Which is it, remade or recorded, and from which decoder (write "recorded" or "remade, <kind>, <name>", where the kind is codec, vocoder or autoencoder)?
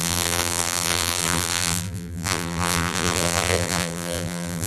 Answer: remade, vocoder, BigVGAN v2